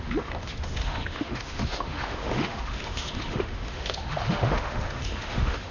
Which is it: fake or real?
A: fake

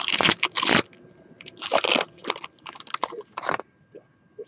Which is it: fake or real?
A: real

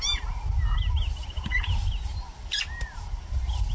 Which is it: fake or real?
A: real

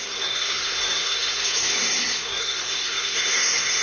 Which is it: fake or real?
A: fake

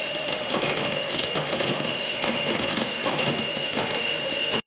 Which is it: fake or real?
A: fake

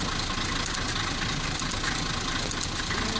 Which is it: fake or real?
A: real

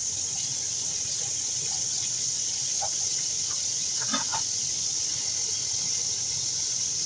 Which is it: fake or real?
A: fake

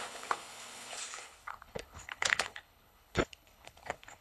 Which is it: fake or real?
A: fake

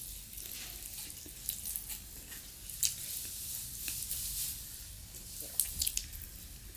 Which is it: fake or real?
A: real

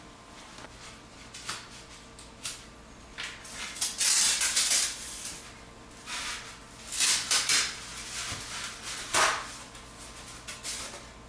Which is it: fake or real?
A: real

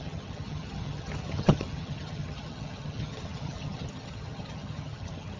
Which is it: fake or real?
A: fake